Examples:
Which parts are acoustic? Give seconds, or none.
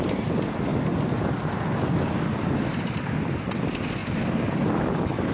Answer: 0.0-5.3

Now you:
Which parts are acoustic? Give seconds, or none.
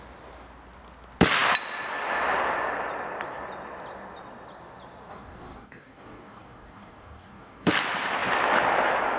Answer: 0.0-5.1; 7.7-9.2